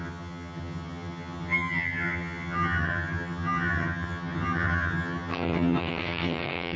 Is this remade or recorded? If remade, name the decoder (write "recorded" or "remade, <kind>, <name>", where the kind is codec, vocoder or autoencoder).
remade, vocoder, HiFi-GAN